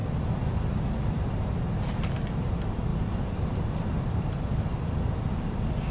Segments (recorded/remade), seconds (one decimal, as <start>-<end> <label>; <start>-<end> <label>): 0.0-1.1 recorded; 1.1-4.5 remade; 4.5-5.9 recorded

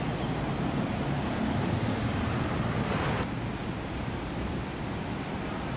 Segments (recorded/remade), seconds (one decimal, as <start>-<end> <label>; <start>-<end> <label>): 0.0-3.6 recorded; 3.6-4.8 remade; 4.8-5.8 recorded

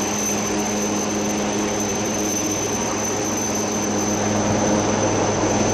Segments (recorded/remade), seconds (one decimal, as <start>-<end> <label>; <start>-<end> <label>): 0.0-1.9 recorded; 1.9-2.9 remade; 2.9-5.7 recorded

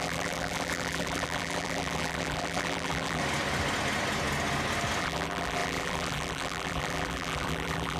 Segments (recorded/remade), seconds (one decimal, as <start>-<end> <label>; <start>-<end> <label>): 0.0-3.2 remade; 3.2-5.0 recorded; 5.0-8.0 remade

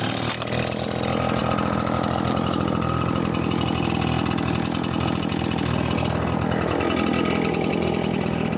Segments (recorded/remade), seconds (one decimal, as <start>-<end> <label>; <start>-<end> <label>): 0.0-8.6 recorded

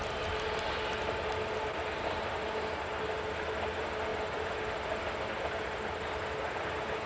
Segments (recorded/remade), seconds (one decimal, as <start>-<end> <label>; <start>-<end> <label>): 0.0-7.1 recorded

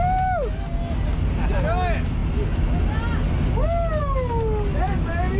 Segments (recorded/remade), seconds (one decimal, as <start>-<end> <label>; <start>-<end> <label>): 0.0-5.4 recorded

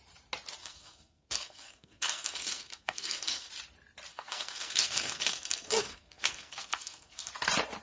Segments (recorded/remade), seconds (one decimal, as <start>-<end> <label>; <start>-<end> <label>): 0.0-0.6 recorded; 0.6-3.5 remade; 3.5-4.1 recorded; 4.1-7.3 remade; 7.3-7.8 recorded